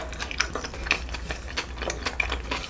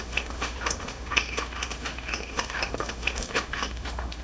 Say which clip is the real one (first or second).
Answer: first